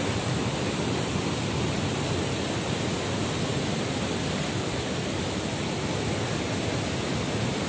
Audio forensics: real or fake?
fake